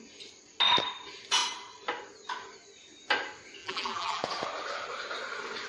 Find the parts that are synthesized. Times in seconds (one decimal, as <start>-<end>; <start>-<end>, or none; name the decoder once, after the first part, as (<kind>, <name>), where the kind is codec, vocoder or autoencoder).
3.6-4.2 (vocoder, BigVGAN v2)

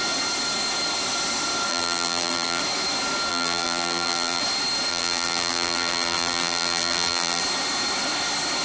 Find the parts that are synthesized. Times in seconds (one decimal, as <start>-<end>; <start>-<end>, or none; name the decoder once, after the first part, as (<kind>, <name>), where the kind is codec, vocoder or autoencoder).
1.7-2.6 (vocoder, BigVGAN v2); 3.3-4.4; 4.9-7.4

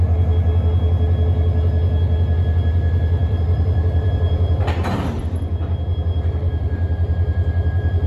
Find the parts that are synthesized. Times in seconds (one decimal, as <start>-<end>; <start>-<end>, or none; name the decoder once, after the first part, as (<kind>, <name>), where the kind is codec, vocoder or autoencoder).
3.2-8.1 (vocoder, BigVGAN v2)

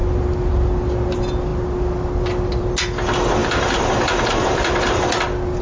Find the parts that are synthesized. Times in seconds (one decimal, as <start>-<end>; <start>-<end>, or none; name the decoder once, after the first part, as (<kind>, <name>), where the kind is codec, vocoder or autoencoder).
3.4-5.1 (vocoder, BigVGAN v2)

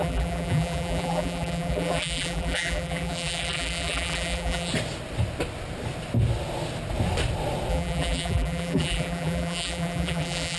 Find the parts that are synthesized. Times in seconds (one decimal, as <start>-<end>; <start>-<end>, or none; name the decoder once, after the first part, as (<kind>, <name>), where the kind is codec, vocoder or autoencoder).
0.0-4.7 (vocoder, BigVGAN v2); 7.7-10.6